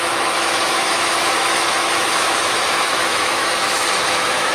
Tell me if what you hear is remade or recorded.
remade